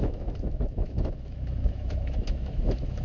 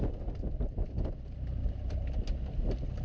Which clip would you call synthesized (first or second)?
first